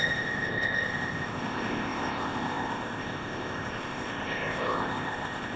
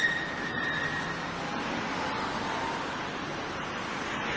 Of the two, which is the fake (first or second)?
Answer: first